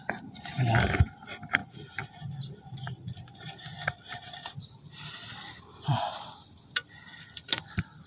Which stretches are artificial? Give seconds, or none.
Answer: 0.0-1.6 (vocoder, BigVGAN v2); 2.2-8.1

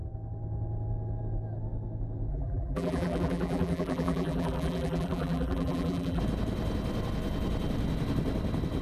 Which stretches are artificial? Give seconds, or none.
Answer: 2.3-6.2 (vocoder, BigVGAN v2)

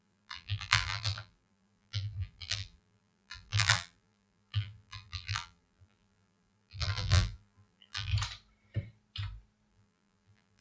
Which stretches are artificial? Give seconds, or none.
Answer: 0.0-8.1 (vocoder, BigVGAN v2); 9.7-10.6

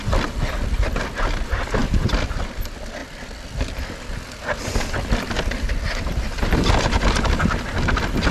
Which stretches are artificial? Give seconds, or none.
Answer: 1.8-2.6 (vocoder, BigVGAN v2)

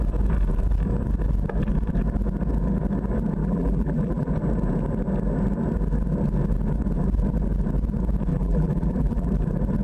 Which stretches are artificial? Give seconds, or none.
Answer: 3.4-4.3 (vocoder, BigVGAN v2); 8.3-9.3